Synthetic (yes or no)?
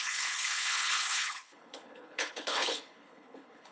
yes